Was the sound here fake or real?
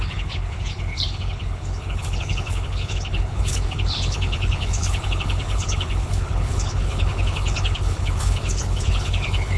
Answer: fake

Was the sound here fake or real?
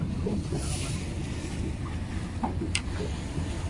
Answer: real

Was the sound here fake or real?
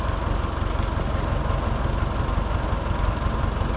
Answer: real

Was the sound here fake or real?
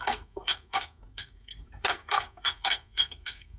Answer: fake